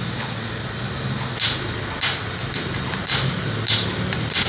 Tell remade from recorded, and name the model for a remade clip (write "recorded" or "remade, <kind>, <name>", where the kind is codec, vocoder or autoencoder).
recorded